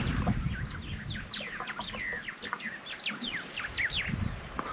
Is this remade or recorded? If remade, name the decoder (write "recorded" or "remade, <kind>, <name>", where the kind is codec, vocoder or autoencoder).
recorded